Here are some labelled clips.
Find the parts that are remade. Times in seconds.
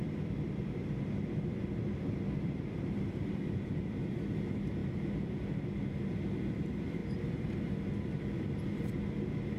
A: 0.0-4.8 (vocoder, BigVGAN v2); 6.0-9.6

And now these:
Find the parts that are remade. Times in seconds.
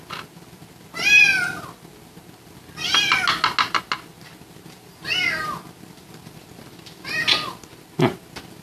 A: none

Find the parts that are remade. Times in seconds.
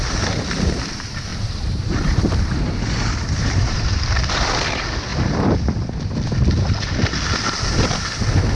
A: 1.3-4.3 (vocoder, BigVGAN v2)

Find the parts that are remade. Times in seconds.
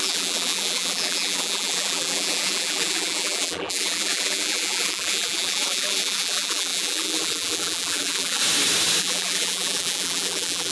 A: 0.0-8.4 (vocoder, BigVGAN v2); 9.0-10.7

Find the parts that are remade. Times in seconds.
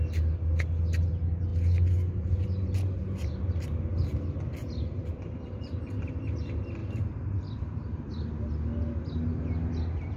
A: 4.6-6.1 (vocoder, BigVGAN v2); 6.8-8.3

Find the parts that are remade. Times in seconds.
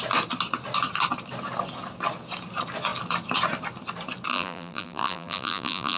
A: 4.3-6.0 (vocoder, BigVGAN v2)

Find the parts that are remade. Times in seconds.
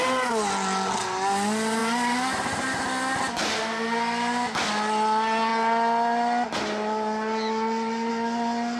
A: none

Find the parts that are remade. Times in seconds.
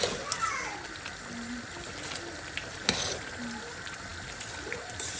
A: none